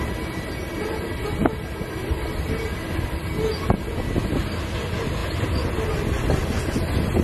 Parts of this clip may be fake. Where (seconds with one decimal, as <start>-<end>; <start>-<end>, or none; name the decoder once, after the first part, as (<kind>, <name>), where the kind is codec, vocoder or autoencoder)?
none